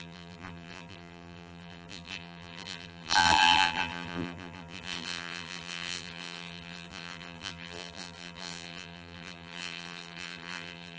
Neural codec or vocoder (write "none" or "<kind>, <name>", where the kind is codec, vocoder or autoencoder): vocoder, BigVGAN v2